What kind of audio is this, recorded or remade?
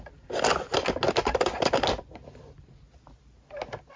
recorded